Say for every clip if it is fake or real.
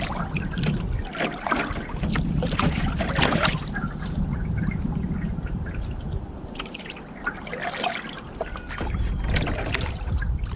real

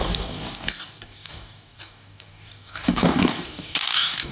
fake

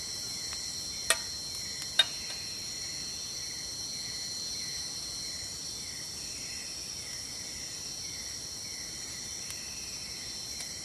real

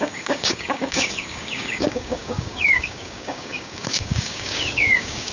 fake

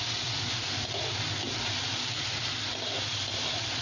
real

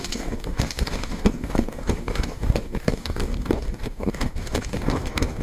fake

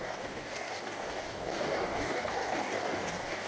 fake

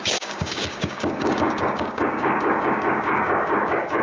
fake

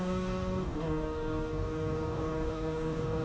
fake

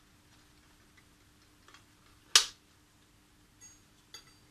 real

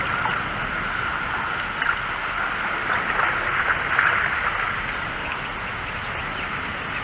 real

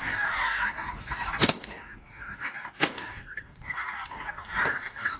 fake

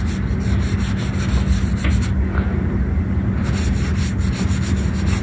real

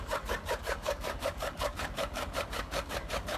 fake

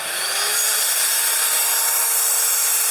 real